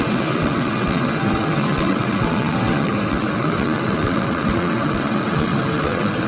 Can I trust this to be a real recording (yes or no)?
no